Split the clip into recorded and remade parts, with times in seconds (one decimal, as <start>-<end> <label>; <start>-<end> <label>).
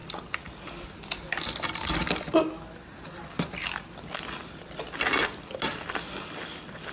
0.0-6.9 recorded